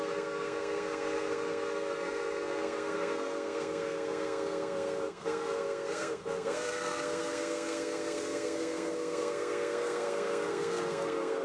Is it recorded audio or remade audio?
remade